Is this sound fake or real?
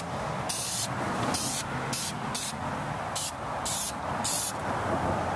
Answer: real